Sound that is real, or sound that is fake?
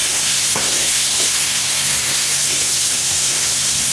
fake